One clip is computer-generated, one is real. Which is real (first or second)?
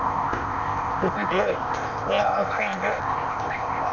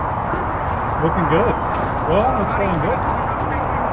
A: second